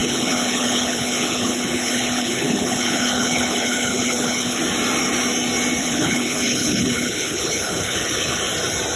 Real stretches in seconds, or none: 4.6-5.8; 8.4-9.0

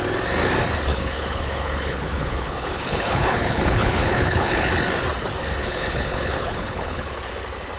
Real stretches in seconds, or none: 0.0-0.9; 4.7-5.6; 7.3-7.8

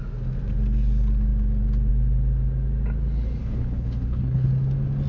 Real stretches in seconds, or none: 0.0-3.4; 4.5-5.1

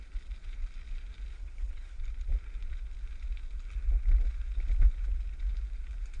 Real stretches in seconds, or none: 0.0-1.3; 2.0-6.2

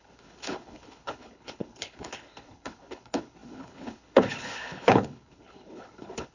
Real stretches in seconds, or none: none

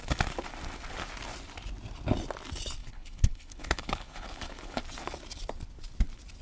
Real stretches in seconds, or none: 0.0-2.8; 4.8-6.4